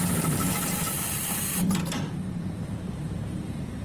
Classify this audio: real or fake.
fake